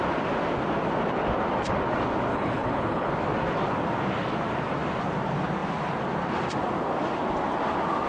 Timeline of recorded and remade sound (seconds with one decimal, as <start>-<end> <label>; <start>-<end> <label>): 0.0-2.3 recorded; 2.3-3.1 remade; 3.1-8.1 recorded